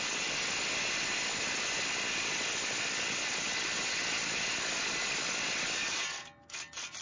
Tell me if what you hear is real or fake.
real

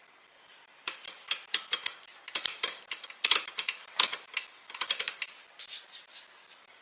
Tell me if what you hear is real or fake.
fake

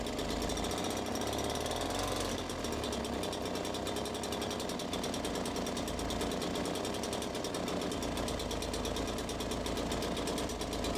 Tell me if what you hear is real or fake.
real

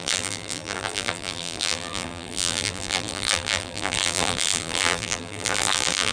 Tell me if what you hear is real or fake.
fake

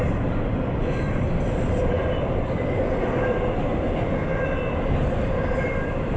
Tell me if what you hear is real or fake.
real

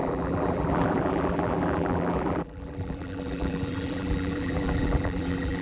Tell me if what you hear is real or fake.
fake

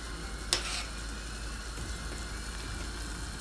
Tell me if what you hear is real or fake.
real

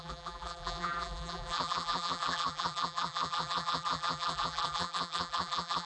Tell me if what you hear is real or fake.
fake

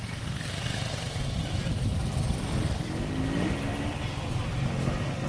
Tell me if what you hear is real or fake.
real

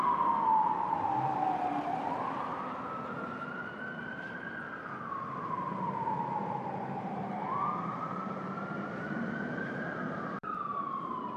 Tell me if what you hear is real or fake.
fake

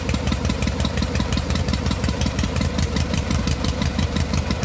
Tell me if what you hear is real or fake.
fake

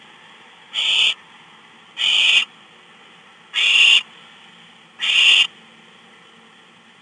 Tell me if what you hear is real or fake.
real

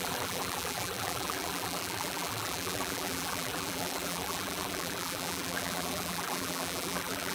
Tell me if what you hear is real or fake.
fake